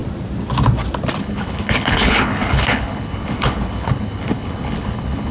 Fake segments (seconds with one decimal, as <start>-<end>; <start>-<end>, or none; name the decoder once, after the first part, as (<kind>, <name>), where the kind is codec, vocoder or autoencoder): 1.2-5.3 (codec, HILCodec)